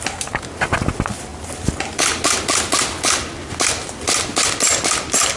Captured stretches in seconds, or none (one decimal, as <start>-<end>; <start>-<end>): 0.0-5.4